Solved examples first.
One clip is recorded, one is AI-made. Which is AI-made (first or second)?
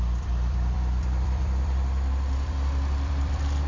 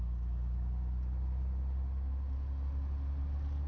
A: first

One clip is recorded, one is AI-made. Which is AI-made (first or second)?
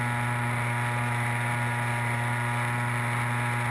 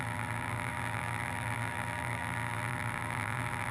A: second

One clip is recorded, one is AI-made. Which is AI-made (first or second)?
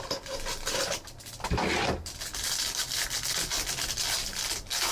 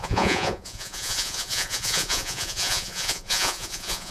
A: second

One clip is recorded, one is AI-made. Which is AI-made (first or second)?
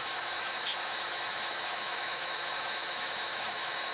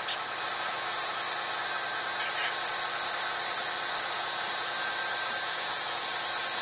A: first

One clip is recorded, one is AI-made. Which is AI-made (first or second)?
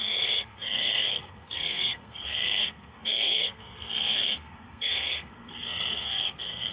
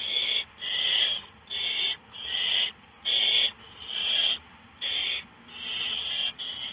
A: first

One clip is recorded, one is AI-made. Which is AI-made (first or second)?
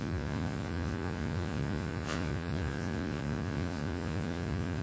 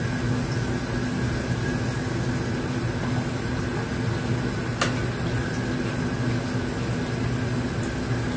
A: first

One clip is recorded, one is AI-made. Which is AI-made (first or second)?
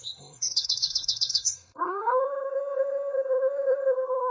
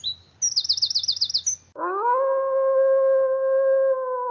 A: first